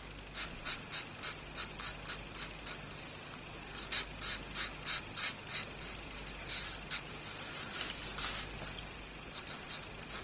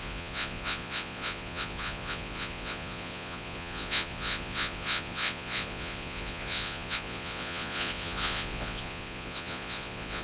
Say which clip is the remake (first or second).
second